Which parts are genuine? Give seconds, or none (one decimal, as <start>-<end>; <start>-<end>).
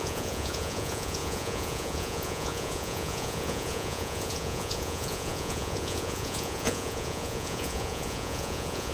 none